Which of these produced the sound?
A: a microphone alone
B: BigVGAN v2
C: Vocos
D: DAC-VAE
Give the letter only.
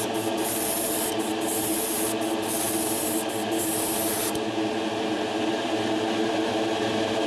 A